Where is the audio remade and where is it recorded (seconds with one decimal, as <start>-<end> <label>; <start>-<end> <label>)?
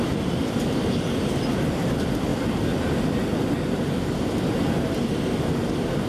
0.0-6.1 recorded